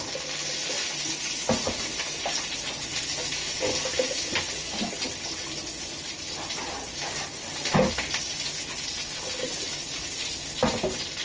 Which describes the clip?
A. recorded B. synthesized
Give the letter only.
A